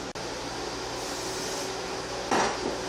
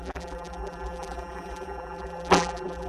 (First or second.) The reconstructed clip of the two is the second